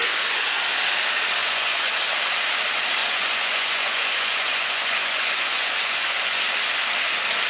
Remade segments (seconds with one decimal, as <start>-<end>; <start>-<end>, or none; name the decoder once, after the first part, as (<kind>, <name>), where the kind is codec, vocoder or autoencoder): 0.0-0.6 (vocoder, Vocos); 1.4-2.0; 3.0-6.4